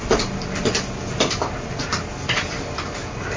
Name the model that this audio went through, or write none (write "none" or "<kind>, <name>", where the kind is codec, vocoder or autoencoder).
none